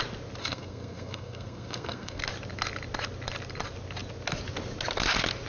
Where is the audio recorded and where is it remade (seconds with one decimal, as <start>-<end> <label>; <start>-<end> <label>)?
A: 0.0-0.4 recorded; 0.4-2.2 remade; 2.2-5.5 recorded